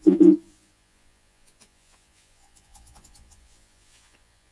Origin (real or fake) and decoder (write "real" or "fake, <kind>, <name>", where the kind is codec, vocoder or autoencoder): fake, vocoder, Vocos